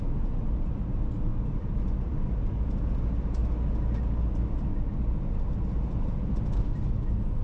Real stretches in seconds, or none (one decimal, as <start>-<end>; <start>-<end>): 0.0-1.3; 2.4-7.4